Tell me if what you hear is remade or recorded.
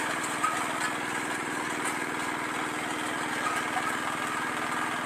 recorded